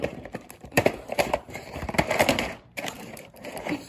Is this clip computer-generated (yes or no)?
yes